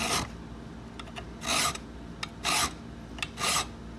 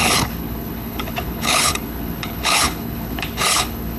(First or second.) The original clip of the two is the first